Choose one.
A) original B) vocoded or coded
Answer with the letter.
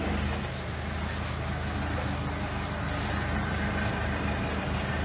A